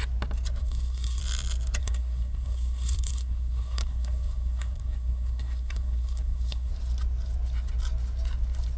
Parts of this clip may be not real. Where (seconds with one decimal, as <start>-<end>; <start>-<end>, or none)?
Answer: 0.6-1.2; 1.8-6.7